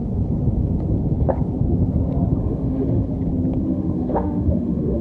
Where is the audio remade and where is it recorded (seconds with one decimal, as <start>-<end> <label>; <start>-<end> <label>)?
0.0-2.4 recorded; 2.4-3.1 remade; 3.1-3.6 recorded; 3.6-5.0 remade